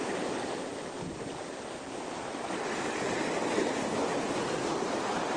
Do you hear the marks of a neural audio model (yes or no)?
yes